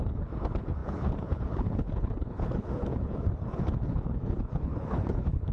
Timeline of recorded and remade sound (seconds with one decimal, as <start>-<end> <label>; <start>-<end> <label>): 0.0-5.5 remade